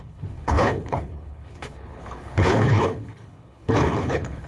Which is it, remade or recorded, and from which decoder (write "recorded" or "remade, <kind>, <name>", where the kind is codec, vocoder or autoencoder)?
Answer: remade, codec, HILCodec